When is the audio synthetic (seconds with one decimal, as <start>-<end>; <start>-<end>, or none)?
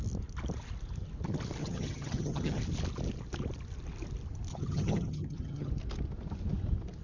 1.6-2.6; 4.5-5.7